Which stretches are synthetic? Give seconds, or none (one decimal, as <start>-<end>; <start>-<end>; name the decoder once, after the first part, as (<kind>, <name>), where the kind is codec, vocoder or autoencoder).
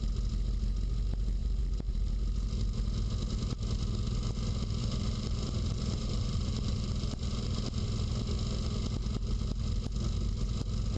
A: 1.4-2.1 (vocoder, BigVGAN v2); 4.8-7.8